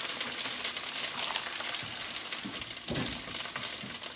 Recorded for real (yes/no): yes